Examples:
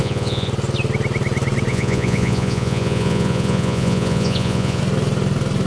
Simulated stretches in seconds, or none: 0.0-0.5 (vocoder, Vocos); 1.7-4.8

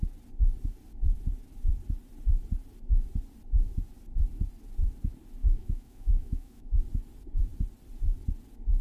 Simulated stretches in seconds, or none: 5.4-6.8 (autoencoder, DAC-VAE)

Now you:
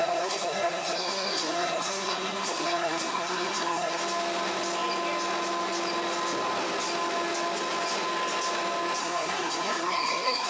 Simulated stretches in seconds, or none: 0.0-4.0 (codec, SNAC); 9.0-10.5

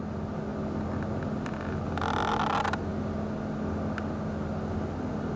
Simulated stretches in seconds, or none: none